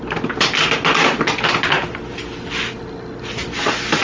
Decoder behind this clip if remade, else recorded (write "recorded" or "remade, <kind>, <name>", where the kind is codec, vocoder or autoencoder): recorded